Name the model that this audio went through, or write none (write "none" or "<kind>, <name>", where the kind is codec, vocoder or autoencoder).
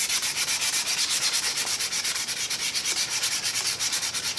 none